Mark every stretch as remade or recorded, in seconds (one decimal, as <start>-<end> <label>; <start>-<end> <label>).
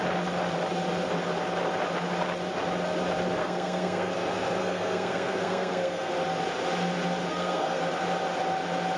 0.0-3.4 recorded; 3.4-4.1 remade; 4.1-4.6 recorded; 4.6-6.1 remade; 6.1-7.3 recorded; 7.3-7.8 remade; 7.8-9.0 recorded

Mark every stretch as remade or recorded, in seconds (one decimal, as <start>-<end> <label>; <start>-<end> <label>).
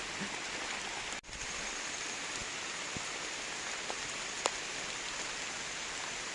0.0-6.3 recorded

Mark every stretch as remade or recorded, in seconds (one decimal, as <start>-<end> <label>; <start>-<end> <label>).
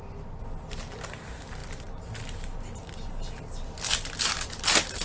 0.0-5.0 recorded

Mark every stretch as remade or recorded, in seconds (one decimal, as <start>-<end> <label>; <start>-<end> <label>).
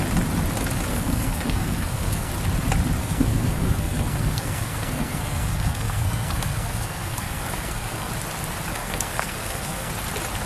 0.0-0.9 recorded; 0.9-2.3 remade; 2.3-3.0 recorded; 3.0-8.1 remade; 8.1-8.7 recorded; 8.7-9.9 remade; 9.9-10.5 recorded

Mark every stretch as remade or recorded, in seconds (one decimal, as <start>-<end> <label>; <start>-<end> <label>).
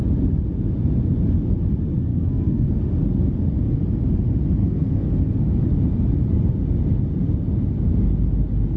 0.0-2.1 recorded; 2.1-2.7 remade; 2.7-4.6 recorded; 4.6-5.1 remade; 5.1-8.8 recorded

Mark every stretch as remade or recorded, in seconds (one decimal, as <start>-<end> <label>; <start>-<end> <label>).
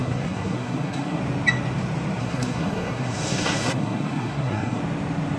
0.0-1.2 remade; 1.2-2.2 recorded; 2.2-4.8 remade; 4.8-5.4 recorded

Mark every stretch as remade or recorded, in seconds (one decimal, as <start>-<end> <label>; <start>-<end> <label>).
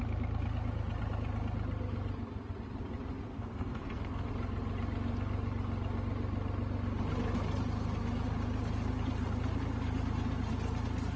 0.0-3.3 recorded; 3.3-4.3 remade; 4.3-11.2 recorded